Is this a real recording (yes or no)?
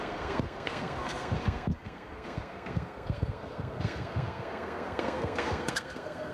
no